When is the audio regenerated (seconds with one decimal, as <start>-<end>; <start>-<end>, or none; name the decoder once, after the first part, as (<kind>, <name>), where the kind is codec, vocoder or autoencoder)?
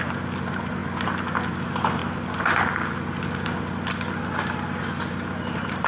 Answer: 0.0-0.8 (vocoder, BigVGAN v2); 1.5-2.0; 5.5-5.9